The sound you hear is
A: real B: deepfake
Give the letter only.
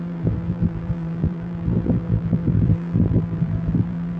B